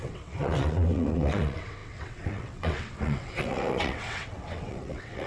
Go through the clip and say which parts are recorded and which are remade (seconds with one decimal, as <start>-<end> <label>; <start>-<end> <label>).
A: 0.0-5.3 remade